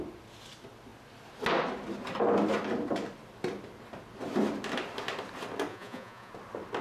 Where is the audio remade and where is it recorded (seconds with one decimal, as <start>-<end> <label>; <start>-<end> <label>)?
0.0-5.7 recorded; 5.7-6.3 remade; 6.3-6.8 recorded